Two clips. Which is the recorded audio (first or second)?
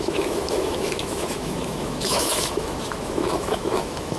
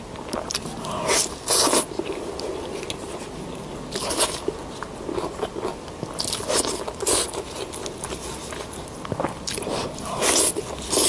second